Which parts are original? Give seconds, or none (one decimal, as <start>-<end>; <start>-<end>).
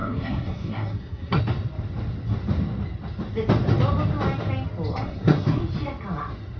1.4-4.9; 5.6-6.6